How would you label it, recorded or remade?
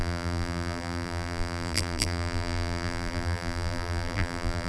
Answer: remade